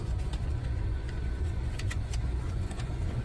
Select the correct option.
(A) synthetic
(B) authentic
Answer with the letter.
A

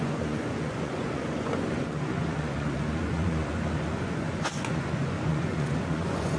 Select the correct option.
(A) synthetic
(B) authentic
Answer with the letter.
A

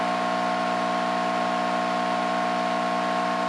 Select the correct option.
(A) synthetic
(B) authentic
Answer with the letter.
B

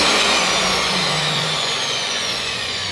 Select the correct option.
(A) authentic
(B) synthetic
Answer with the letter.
B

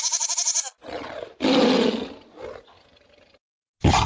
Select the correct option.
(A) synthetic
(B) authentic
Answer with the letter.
B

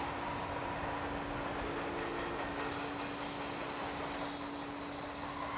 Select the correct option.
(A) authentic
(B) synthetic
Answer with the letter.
A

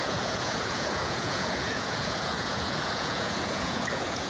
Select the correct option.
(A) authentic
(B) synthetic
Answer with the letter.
B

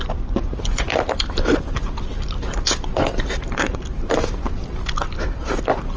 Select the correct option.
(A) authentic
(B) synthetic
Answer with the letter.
A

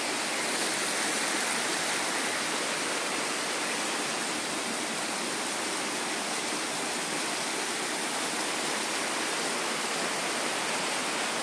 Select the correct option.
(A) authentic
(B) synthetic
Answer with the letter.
A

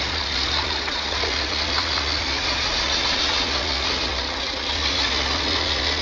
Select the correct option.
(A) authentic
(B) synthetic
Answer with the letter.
B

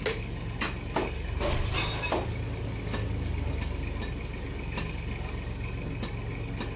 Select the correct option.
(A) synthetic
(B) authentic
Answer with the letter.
B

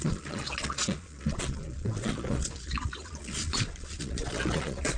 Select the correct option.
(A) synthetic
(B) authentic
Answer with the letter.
A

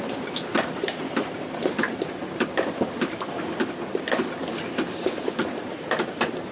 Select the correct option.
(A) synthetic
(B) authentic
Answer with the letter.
B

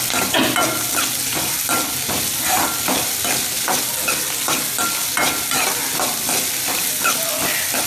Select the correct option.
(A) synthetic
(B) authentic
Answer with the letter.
B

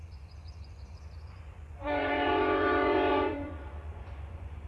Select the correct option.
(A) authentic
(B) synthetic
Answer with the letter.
B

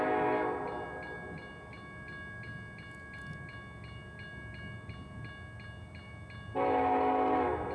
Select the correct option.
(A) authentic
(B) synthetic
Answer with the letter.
A